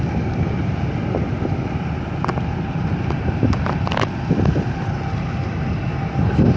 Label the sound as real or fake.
real